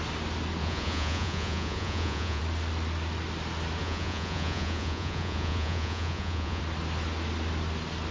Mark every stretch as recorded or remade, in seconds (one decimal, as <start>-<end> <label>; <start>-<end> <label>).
0.0-0.6 recorded; 0.6-2.4 remade; 2.4-3.8 recorded; 3.8-6.6 remade; 6.6-8.1 recorded